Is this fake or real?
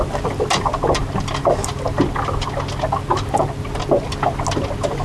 real